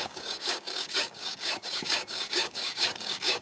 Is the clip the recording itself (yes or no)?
no